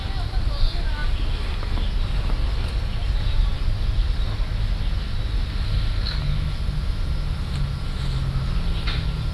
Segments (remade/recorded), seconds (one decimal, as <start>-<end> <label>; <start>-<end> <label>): 0.0-9.3 recorded

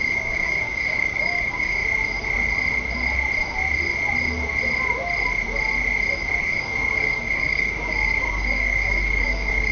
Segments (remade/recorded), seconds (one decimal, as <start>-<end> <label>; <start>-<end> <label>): 0.0-1.8 remade; 1.8-6.4 recorded; 6.4-9.7 remade

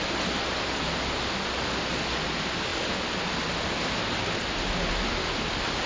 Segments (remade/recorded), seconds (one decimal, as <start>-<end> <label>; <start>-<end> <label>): 0.0-5.9 recorded

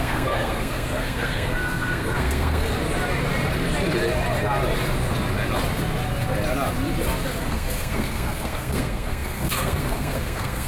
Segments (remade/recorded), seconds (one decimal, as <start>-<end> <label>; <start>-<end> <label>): 0.0-2.7 remade; 2.7-7.4 recorded; 7.4-10.7 remade

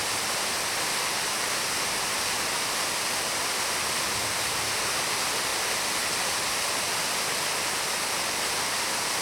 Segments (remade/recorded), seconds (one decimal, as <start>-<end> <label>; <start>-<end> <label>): 0.0-9.2 recorded

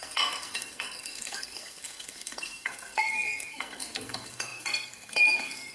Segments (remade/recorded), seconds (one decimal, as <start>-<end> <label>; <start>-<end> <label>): 0.0-5.7 remade